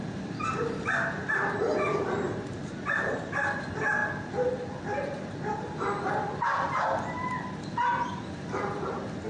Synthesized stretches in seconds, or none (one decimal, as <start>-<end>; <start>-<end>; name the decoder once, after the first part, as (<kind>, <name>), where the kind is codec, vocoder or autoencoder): none